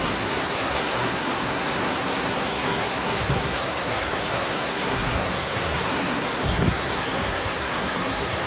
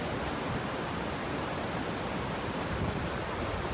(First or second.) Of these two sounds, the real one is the second